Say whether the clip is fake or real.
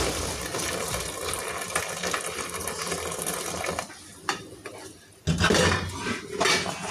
real